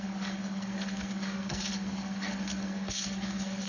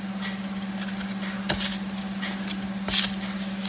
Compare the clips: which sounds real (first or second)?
second